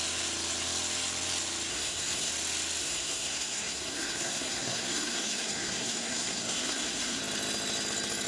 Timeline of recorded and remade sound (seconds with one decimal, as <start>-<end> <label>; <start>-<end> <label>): 0.0-1.7 recorded; 1.7-2.3 remade; 2.3-2.8 recorded; 2.8-7.2 remade; 7.2-8.3 recorded